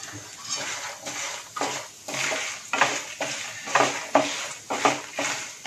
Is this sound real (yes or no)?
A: yes